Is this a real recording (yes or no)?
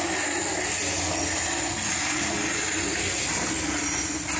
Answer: yes